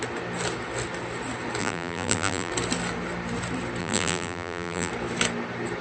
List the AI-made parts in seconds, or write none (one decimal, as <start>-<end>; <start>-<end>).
1.6-2.5; 3.8-4.9